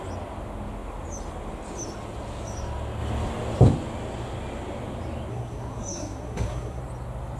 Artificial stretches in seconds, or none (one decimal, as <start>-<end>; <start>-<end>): 5.3-6.8